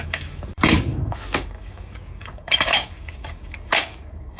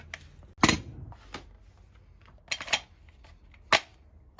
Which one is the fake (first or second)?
first